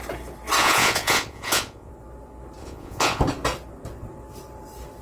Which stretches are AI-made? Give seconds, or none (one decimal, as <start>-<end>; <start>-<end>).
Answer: 0.6-1.9; 2.6-3.2